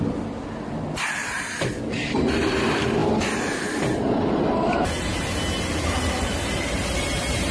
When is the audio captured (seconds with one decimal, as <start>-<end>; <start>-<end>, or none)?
0.0-7.5